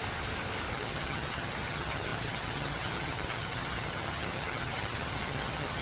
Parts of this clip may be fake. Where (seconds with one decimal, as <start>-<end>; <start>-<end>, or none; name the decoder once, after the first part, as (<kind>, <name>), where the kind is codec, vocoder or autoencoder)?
0.7-5.8 (vocoder, HiFi-GAN)